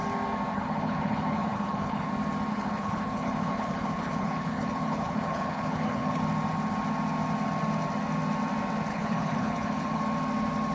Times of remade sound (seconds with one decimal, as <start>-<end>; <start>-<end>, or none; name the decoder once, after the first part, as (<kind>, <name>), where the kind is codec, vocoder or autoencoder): 0.5-2.1 (codec, HILCodec); 2.5-6.2; 8.9-10.0